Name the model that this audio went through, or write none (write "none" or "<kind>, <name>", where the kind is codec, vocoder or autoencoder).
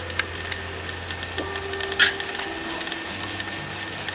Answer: none